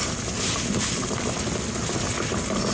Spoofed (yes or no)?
no